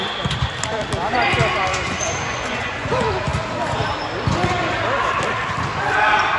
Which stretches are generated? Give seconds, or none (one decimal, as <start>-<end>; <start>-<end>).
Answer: 1.7-2.9